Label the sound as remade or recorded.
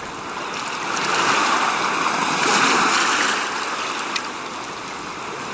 recorded